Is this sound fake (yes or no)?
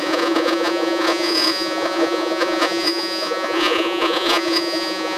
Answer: yes